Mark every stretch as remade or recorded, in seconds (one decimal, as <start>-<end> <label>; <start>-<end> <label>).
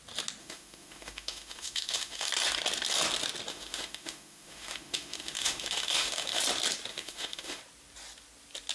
0.0-0.4 recorded; 0.4-2.3 remade; 2.3-3.5 recorded; 3.5-6.4 remade; 6.4-6.9 recorded; 6.9-7.6 remade; 7.6-8.7 recorded